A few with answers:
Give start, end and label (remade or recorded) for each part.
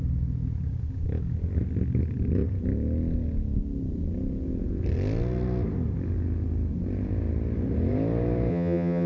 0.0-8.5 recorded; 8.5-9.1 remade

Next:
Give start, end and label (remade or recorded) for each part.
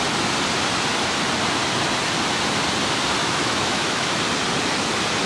0.0-3.2 recorded; 3.2-4.2 remade; 4.2-5.3 recorded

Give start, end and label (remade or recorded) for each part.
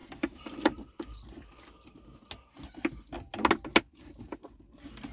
0.0-0.8 remade; 0.8-5.1 recorded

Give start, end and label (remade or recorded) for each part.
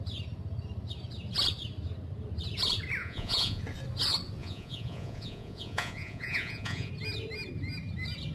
0.0-3.0 recorded; 3.0-3.6 remade; 3.6-4.4 recorded; 4.4-6.9 remade; 6.9-8.3 recorded